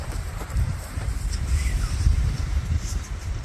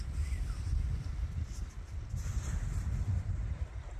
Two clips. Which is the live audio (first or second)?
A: second